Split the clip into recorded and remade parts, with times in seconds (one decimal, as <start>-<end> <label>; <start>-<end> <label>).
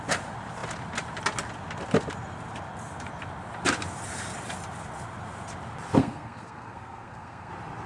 0.0-6.0 recorded; 6.0-7.5 remade; 7.5-7.9 recorded